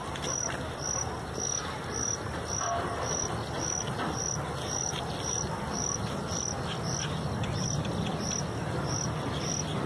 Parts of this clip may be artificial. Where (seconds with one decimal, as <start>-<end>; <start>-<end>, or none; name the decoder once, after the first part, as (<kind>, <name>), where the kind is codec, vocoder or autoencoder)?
none

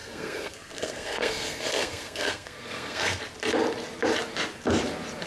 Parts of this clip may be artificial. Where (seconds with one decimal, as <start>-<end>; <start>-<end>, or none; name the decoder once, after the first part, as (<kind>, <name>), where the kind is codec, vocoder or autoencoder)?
0.0-3.2 (codec, SNAC)

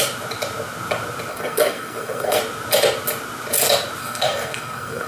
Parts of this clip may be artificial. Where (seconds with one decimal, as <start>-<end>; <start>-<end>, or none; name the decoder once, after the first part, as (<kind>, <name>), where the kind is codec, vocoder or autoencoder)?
1.3-2.4 (codec, SNAC); 4.0-5.1